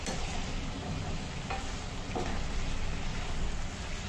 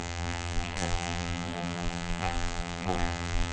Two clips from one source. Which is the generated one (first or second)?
second